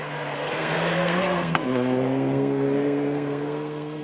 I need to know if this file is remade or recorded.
remade